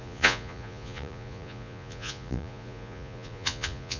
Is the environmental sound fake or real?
fake